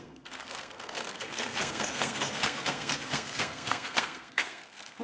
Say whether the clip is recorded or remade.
remade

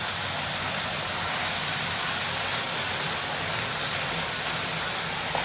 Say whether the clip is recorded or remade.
recorded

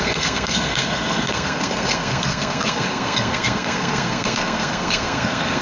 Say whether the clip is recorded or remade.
remade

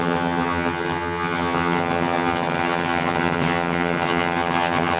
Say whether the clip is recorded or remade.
remade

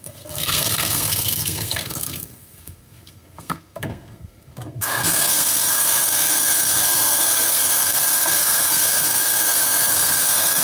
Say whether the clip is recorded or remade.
remade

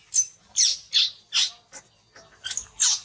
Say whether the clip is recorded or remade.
recorded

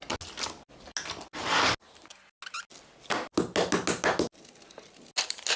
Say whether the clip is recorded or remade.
recorded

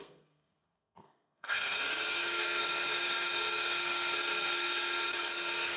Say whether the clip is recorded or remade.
remade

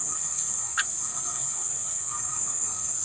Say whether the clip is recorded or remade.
remade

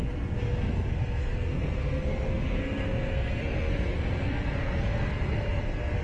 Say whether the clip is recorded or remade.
remade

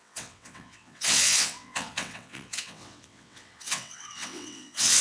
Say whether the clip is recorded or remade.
remade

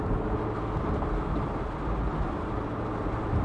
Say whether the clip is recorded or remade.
recorded